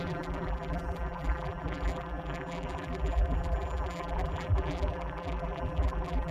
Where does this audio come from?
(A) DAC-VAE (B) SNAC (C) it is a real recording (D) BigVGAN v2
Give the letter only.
D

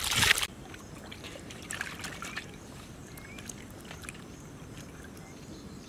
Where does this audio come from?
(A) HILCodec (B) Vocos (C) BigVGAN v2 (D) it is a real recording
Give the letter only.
C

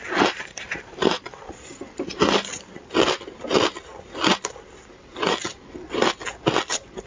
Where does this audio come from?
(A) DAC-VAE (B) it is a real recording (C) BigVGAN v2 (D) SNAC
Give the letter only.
C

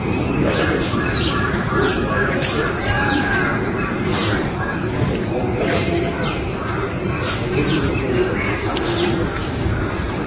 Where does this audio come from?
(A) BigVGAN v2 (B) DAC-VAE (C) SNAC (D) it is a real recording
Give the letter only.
A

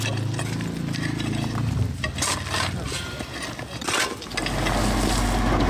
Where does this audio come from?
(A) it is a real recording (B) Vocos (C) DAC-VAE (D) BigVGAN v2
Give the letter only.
A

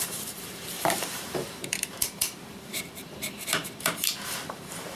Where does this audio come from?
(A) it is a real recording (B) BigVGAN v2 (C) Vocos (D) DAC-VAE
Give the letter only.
B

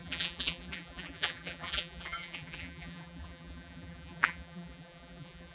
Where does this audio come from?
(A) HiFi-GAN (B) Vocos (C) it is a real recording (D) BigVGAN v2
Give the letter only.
D